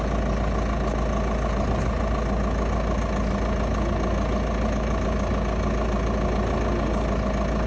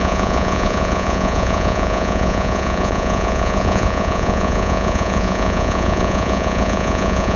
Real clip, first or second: first